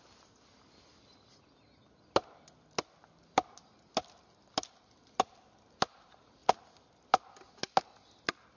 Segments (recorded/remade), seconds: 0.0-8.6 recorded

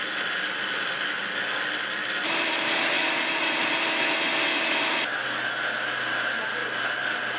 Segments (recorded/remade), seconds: 0.0-7.4 recorded

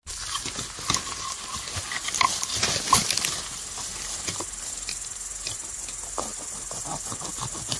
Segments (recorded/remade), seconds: 0.0-7.8 recorded

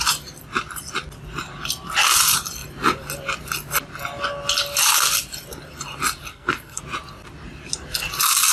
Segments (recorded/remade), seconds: 0.0-6.3 recorded; 6.3-6.8 remade; 6.8-8.5 recorded

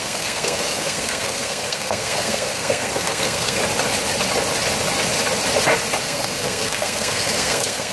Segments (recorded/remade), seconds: 0.0-3.6 remade; 3.6-6.0 recorded; 6.0-7.9 remade

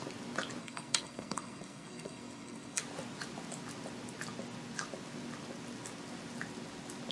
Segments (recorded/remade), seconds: 0.0-0.6 recorded; 0.6-2.8 remade; 2.8-7.1 recorded

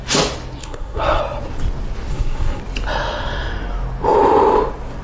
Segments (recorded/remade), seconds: 0.0-0.6 recorded; 0.6-1.2 remade; 1.2-2.1 recorded; 2.1-2.6 remade; 2.6-5.0 recorded

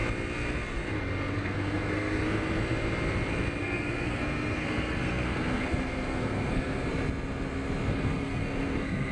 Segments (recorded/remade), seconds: 0.0-1.3 recorded; 1.3-2.2 remade; 2.2-3.6 recorded; 3.6-6.9 remade; 6.9-7.9 recorded; 7.9-9.1 remade